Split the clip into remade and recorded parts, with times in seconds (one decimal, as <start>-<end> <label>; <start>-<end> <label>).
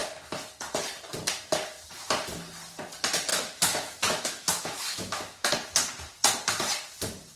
0.0-3.3 recorded; 3.3-5.5 remade; 5.5-7.4 recorded